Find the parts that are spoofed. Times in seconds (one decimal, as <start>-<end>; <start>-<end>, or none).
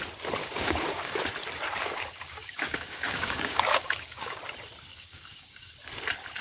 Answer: 0.4-1.2; 1.8-4.4; 4.9-5.7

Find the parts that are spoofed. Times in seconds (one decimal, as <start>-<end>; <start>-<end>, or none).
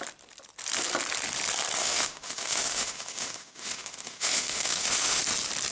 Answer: 1.8-5.2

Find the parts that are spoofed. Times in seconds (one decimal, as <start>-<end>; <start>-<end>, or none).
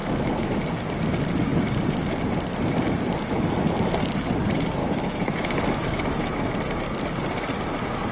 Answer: 0.0-0.6; 4.8-6.5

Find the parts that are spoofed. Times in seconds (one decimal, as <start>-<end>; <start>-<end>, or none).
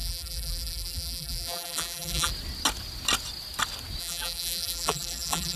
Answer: 0.0-2.3; 4.0-5.6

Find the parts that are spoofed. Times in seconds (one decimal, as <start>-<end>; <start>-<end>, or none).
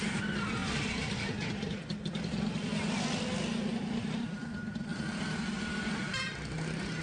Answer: none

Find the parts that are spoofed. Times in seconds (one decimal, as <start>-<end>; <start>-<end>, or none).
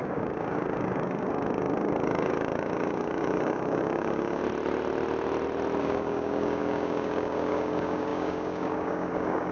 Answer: 0.0-4.4; 5.8-9.5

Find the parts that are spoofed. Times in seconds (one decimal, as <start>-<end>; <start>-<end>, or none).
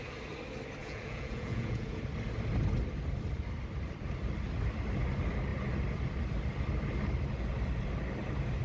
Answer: 0.8-2.0